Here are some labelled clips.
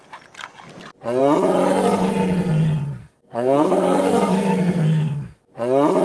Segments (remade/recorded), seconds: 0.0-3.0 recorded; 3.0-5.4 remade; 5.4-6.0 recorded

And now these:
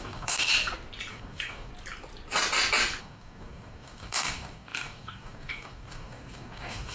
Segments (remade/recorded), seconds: 0.0-0.5 remade; 0.5-1.1 recorded; 1.1-1.7 remade; 1.7-3.0 recorded; 3.0-6.9 remade

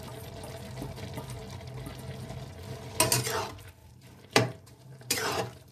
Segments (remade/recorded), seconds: 0.0-3.8 recorded; 3.8-5.7 remade

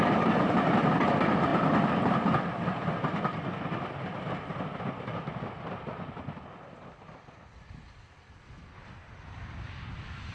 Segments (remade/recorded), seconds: 0.0-10.3 recorded